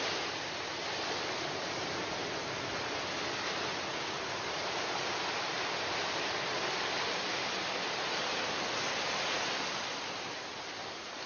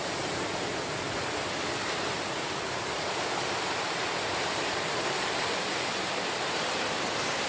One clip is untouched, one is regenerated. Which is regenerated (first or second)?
second